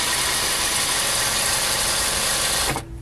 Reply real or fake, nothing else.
real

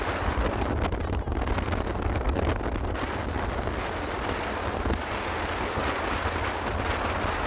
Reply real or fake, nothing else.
real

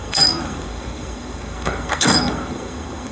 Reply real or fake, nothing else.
fake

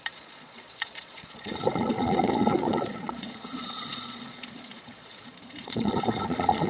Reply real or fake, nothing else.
fake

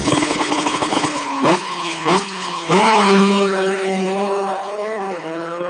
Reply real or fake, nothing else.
fake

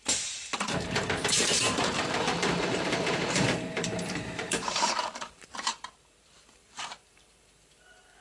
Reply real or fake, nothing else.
fake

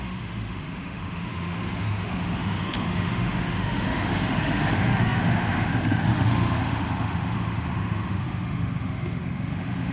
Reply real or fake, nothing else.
fake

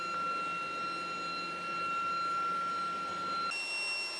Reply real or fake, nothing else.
real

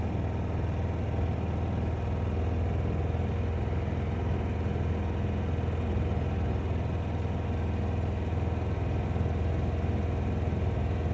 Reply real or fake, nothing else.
real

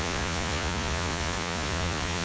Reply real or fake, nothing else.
fake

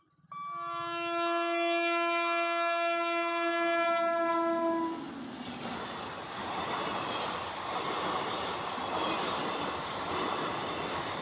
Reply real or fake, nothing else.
real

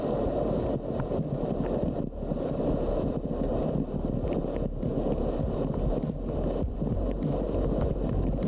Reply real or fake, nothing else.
real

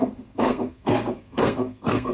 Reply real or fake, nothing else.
fake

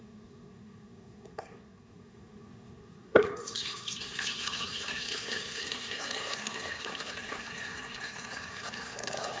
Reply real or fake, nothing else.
fake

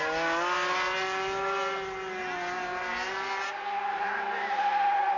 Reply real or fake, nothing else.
real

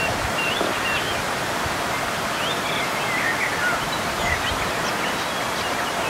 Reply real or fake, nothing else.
real